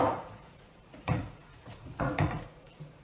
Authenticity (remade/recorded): remade